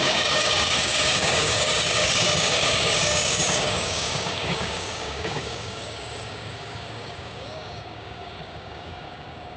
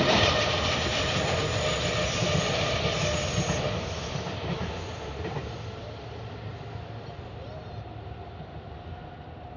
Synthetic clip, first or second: first